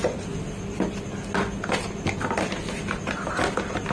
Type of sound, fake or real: real